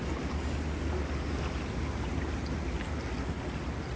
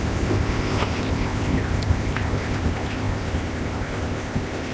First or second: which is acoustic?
first